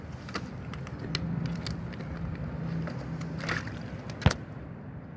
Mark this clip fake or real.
real